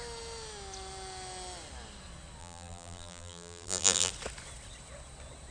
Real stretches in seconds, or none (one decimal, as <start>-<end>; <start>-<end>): 0.0-2.4; 4.1-5.5